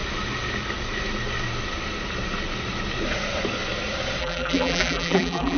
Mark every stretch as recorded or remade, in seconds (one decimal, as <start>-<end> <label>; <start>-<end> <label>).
0.0-4.2 recorded; 4.2-5.6 remade

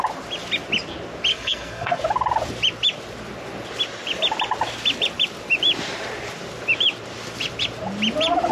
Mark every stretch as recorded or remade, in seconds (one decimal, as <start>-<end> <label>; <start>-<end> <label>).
0.0-1.3 recorded; 1.3-2.0 remade; 2.0-8.5 recorded

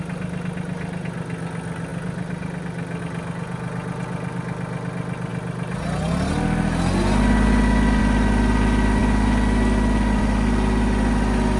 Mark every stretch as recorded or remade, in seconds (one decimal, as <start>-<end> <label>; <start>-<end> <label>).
0.0-11.6 recorded